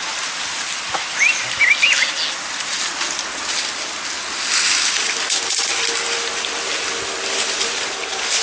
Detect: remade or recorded recorded